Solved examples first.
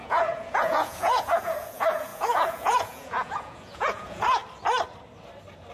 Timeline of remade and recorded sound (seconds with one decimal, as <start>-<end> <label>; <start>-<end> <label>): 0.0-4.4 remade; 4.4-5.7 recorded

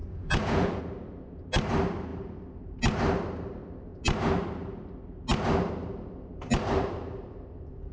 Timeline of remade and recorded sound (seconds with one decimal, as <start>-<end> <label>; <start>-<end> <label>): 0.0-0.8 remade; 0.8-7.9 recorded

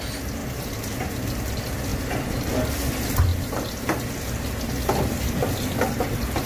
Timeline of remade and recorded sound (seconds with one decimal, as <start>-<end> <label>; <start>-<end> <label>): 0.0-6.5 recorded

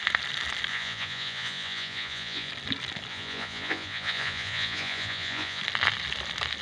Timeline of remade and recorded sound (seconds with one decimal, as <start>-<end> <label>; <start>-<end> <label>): 0.0-0.7 recorded; 0.7-2.5 remade; 2.5-3.1 recorded; 3.1-5.6 remade; 5.6-6.6 recorded

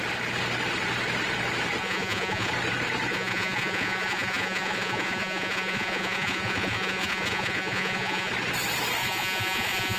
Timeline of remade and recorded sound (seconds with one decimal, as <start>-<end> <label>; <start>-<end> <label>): 0.0-1.8 recorded; 1.8-2.5 remade; 2.5-3.1 recorded; 3.1-8.3 remade; 8.3-9.0 recorded; 9.0-10.0 remade

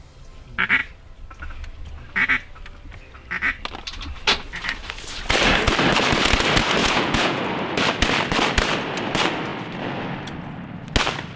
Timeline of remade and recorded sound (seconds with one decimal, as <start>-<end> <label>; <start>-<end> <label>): 0.0-6.8 recorded; 6.8-7.4 remade; 7.4-11.4 recorded

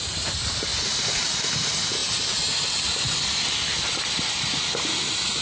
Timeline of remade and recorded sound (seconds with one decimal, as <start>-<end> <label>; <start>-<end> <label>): 0.0-0.7 recorded; 0.7-1.4 remade; 1.4-5.4 recorded

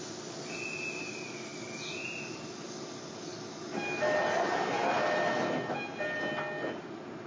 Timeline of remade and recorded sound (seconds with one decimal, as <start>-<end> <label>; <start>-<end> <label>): 0.0-7.3 recorded